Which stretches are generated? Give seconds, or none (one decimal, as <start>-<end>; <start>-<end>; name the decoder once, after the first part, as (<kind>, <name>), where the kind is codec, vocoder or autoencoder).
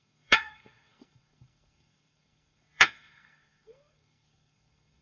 0.0-5.0 (codec, SNAC)